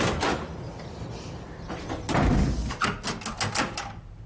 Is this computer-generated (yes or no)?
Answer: no